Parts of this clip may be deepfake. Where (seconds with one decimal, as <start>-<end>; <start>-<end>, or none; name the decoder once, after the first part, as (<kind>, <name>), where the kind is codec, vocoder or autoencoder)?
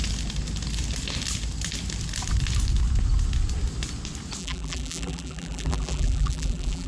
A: 4.4-6.9 (vocoder, BigVGAN v2)